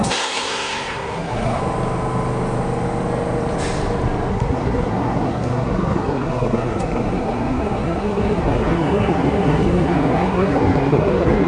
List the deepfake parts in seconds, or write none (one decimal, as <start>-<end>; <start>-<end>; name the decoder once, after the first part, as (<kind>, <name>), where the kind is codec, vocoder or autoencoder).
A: 0.0-1.6 (codec, SNAC); 4.3-11.5